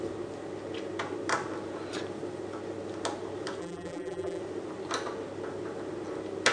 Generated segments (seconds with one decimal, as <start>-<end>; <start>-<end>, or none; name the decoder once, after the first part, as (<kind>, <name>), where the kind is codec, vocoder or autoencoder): 3.6-4.4 (vocoder, BigVGAN v2)